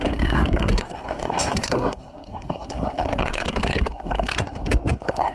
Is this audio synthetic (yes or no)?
yes